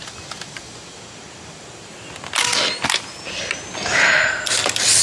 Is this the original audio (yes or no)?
yes